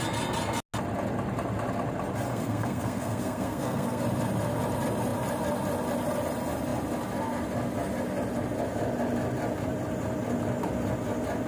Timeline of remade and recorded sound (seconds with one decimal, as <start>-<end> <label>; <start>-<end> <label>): 0.0-2.3 recorded; 2.3-4.0 remade; 4.0-11.5 recorded